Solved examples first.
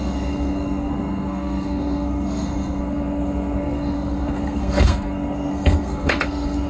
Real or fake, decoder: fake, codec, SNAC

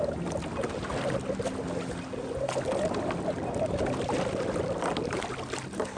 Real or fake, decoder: real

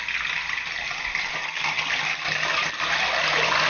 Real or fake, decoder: real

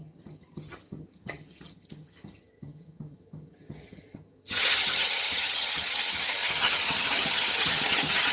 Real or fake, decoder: fake, vocoder, HiFi-GAN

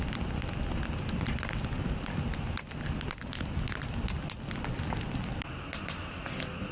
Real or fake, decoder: real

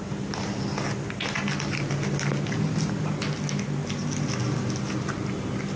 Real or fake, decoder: real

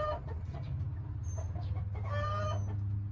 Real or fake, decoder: real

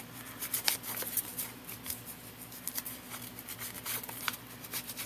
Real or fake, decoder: fake, vocoder, BigVGAN v2